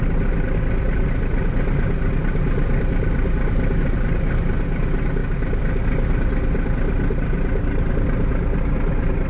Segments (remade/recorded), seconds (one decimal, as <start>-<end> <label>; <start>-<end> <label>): 0.0-9.3 recorded